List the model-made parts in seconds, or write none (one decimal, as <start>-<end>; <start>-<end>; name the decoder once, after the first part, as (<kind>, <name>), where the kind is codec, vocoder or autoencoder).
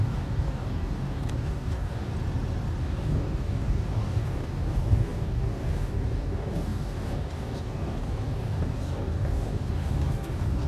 0.0-2.1 (codec, DAC); 2.8-10.7